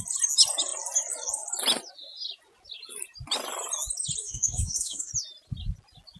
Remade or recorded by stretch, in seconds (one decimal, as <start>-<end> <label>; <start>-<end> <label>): 0.0-4.2 recorded; 4.2-5.1 remade; 5.1-6.2 recorded